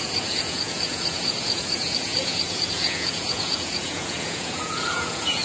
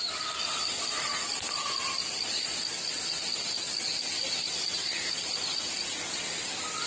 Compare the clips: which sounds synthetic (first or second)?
first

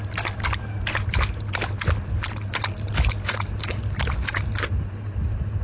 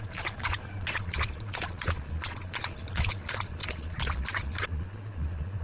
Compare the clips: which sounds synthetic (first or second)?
second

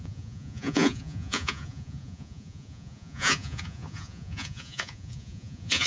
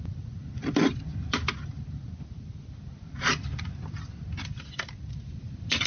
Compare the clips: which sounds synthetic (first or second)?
first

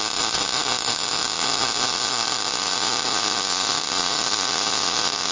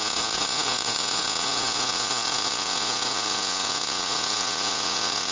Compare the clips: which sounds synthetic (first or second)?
second